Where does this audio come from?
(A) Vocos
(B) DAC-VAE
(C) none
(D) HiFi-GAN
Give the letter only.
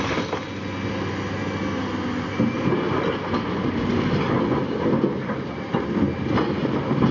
C